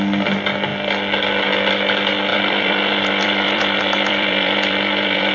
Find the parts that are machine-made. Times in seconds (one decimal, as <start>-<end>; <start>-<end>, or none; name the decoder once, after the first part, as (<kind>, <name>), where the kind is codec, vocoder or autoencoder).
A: 2.3-5.3 (vocoder, BigVGAN v2)